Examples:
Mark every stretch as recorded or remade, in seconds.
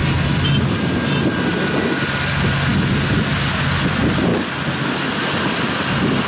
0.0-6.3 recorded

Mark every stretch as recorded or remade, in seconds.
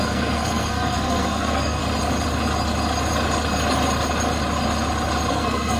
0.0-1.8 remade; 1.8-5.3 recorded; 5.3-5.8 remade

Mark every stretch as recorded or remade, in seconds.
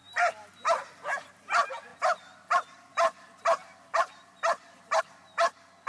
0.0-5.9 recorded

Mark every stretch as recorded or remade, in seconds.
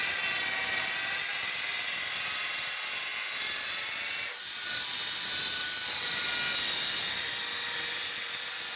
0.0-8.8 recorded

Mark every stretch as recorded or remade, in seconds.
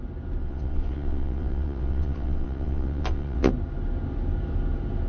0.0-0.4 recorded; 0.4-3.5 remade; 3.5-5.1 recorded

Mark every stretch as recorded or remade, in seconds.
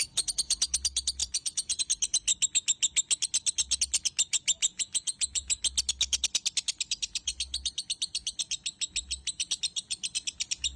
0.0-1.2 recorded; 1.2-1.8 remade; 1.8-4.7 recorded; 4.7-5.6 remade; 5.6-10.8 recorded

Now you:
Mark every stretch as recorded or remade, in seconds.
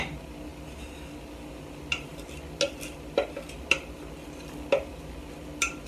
0.0-5.9 recorded